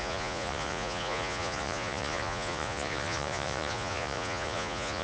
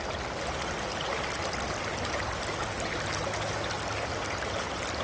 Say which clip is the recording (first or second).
second